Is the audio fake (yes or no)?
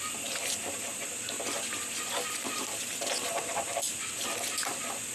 no